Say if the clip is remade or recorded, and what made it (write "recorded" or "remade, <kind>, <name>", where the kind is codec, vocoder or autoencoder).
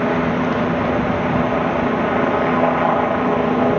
recorded